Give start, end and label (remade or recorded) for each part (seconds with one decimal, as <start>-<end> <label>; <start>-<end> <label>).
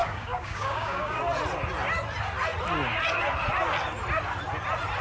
0.0-1.2 remade; 1.2-5.0 recorded